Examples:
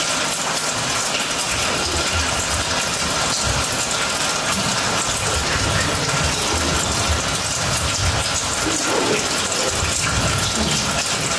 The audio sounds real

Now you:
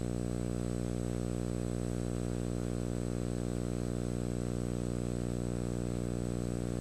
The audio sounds real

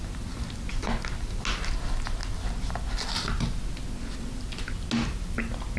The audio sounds real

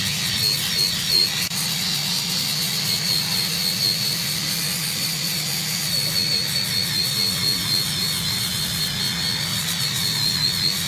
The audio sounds real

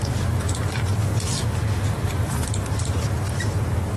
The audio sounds fake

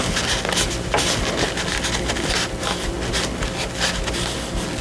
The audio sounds real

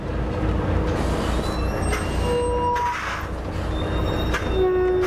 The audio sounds real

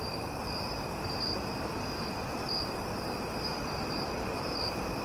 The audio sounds fake